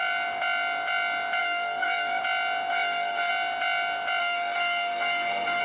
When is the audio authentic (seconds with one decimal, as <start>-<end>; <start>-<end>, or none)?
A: 0.0-1.4; 2.2-2.7; 3.3-4.2